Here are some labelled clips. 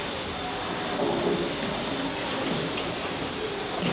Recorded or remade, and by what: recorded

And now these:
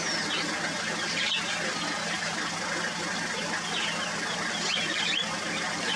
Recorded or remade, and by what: recorded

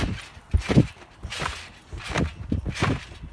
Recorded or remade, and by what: recorded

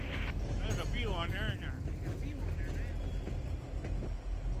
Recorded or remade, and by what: recorded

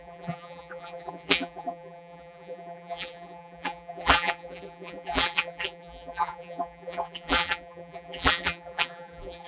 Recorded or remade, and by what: remade, vocoder, BigVGAN v2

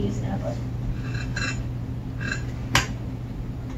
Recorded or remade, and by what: recorded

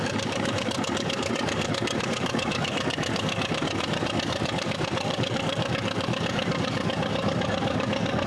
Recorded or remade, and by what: remade, codec, DAC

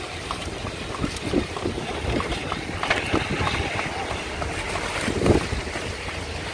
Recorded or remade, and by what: recorded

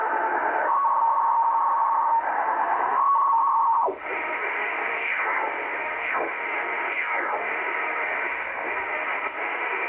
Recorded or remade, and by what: remade, autoencoder, DAC-VAE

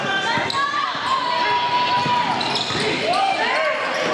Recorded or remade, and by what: recorded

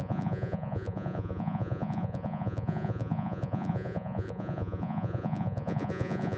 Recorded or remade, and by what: remade, vocoder, Vocos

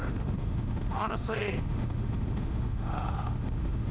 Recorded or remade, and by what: remade, autoencoder, DAC-VAE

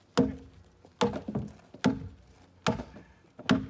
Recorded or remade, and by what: recorded